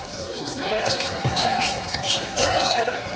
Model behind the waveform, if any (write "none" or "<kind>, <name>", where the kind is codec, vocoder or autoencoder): codec, SNAC